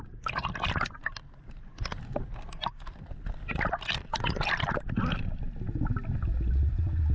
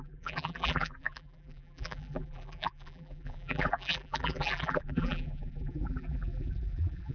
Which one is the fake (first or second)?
second